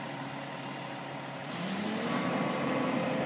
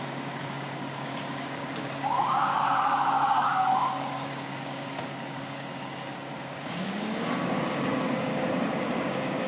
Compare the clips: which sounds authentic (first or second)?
first